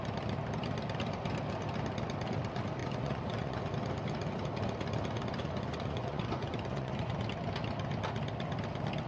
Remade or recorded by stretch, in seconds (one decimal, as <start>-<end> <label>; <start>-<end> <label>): 0.0-2.8 recorded; 2.8-3.6 remade; 3.6-5.4 recorded; 5.4-7.1 remade; 7.1-9.1 recorded